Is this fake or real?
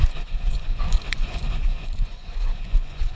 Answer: fake